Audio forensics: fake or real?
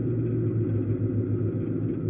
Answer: real